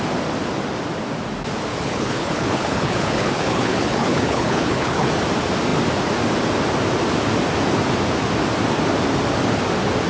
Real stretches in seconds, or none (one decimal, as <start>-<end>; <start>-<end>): 0.0-1.7; 5.1-10.1